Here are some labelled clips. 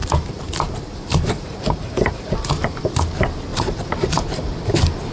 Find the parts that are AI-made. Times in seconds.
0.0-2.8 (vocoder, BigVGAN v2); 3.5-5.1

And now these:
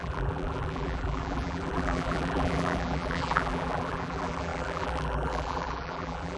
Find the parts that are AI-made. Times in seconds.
0.0-6.4 (vocoder, BigVGAN v2)

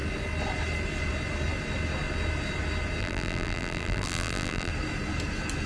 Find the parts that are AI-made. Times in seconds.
3.0-4.7 (vocoder, BigVGAN v2)

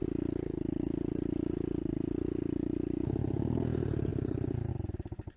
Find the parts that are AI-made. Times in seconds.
3.2-4.1 (vocoder, BigVGAN v2); 4.7-5.4

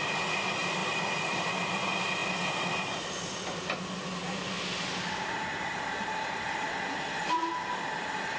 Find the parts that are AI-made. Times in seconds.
0.8-1.5 (vocoder, BigVGAN v2)

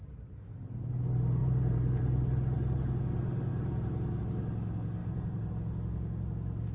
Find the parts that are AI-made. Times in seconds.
1.4-2.9 (vocoder, BigVGAN v2); 3.5-4.2; 5.0-5.5